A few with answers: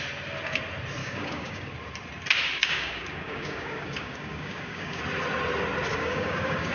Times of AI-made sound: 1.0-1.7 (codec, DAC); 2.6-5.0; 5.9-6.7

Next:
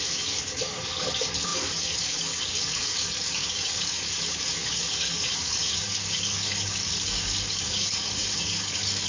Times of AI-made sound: 0.0-9.1 (codec, DAC)

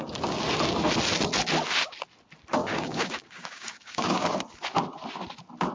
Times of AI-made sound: 2.6-4.3 (codec, DAC)